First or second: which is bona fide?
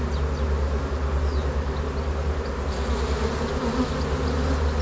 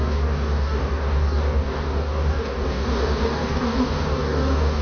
first